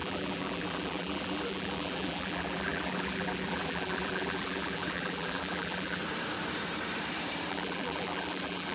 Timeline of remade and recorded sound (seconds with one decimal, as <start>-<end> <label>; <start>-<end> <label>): 0.0-6.0 remade; 6.0-7.5 recorded; 7.5-8.7 remade